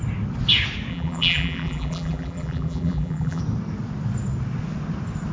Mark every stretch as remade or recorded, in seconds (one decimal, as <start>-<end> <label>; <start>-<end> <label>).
0.0-0.9 recorded; 0.9-3.4 remade; 3.4-5.3 recorded